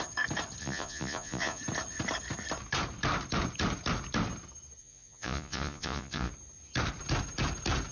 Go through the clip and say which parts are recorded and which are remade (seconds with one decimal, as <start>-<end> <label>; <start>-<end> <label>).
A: 0.0-0.6 recorded; 0.6-1.6 remade; 1.6-4.8 recorded; 4.8-6.3 remade; 6.3-7.9 recorded